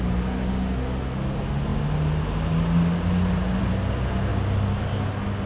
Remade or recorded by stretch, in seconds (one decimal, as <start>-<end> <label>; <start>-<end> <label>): 0.0-5.5 recorded